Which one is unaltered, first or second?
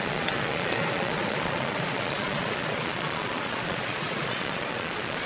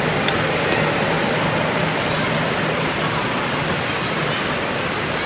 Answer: second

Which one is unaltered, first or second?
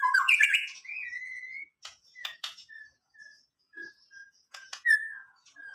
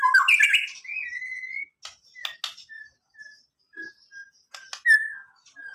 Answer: second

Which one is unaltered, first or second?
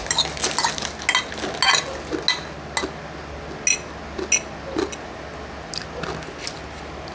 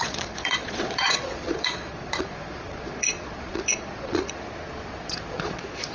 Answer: first